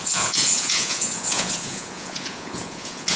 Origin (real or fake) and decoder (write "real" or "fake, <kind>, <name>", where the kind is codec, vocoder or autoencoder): fake, vocoder, Vocos